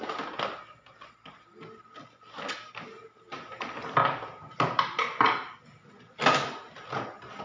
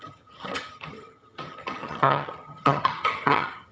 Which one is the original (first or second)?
first